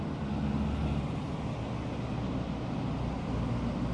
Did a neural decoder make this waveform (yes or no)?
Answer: no